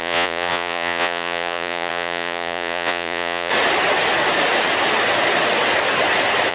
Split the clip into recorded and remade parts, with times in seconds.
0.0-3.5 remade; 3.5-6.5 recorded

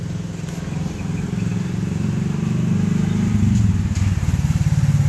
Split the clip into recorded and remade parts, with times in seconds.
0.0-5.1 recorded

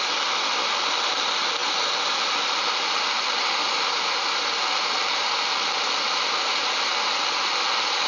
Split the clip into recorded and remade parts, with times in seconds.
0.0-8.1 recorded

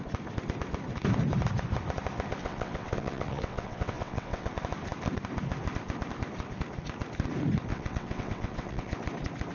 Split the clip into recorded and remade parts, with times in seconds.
0.0-2.4 recorded; 2.4-4.5 remade; 4.5-7.7 recorded; 7.7-8.9 remade; 8.9-9.5 recorded

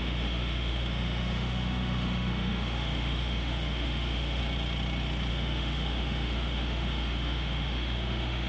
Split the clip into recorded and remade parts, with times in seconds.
0.0-4.4 remade; 4.4-5.3 recorded; 5.3-8.5 remade

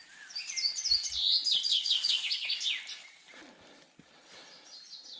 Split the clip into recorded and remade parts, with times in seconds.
0.0-1.7 recorded; 1.7-2.7 remade; 2.7-5.2 recorded

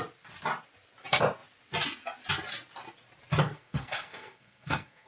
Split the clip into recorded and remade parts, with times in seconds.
0.0-3.4 recorded; 3.4-5.1 remade

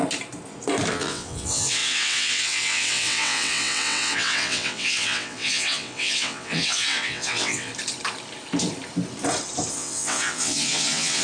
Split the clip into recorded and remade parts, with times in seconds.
0.0-0.9 recorded; 0.9-7.7 remade; 7.7-9.7 recorded; 9.7-11.2 remade